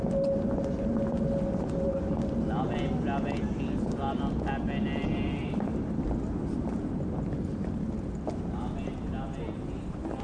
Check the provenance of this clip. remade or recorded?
recorded